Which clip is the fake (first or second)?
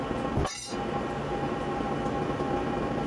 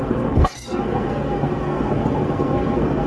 second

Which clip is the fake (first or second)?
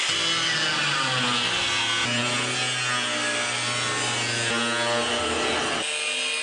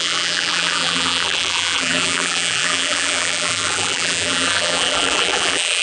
second